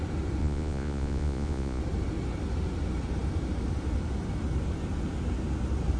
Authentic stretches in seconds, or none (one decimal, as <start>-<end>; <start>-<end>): 0.0-0.4; 1.8-6.0